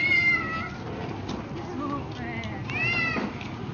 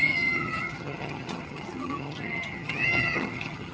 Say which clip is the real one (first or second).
first